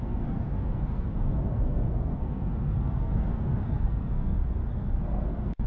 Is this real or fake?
fake